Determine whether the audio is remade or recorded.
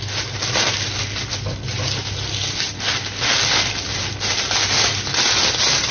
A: recorded